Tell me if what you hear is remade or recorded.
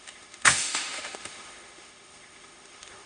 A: remade